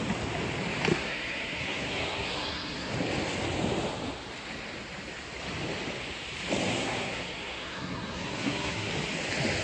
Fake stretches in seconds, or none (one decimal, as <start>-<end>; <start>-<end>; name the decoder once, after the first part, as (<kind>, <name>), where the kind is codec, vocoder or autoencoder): 0.9-2.9 (codec, SNAC); 6.7-8.9